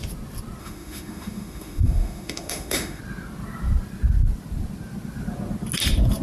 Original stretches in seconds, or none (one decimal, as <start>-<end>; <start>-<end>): 0.0-0.6; 3.0-6.2